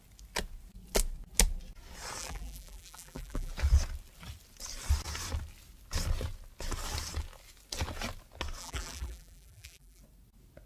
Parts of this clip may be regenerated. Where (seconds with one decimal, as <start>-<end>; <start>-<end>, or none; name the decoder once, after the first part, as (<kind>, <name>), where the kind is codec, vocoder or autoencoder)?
2.2-3.5 (vocoder, BigVGAN v2); 8.6-10.0